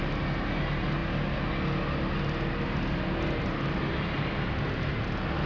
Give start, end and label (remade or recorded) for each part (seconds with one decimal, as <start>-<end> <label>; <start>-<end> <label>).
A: 0.0-5.5 recorded